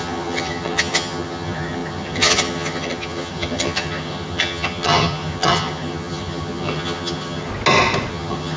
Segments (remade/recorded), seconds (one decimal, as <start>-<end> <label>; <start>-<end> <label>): 0.0-7.5 remade; 7.5-8.1 recorded; 8.1-8.6 remade